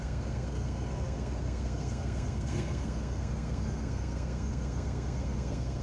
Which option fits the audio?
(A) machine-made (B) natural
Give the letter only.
A